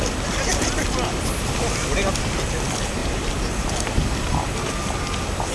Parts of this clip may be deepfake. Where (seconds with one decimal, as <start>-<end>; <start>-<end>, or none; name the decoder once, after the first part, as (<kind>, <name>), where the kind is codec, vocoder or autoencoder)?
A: 3.0-4.3 (vocoder, BigVGAN v2)